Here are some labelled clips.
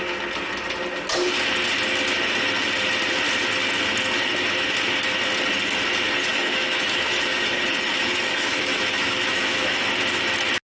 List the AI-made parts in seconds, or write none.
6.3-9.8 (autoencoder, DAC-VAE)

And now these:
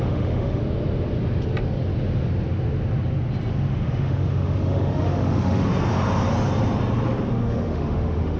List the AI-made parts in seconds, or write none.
0.0-0.6 (autoencoder, DAC-VAE); 3.7-5.7; 7.3-8.4